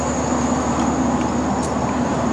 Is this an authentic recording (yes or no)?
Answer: yes